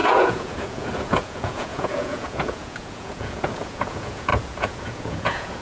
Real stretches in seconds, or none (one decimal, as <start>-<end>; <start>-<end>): none